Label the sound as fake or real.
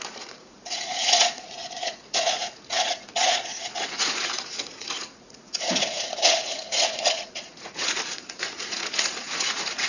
fake